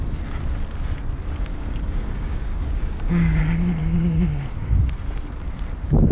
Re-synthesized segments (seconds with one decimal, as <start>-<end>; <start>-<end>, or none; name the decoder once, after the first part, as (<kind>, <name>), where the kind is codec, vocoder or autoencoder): 1.5-3.4 (codec, DAC); 3.8-4.9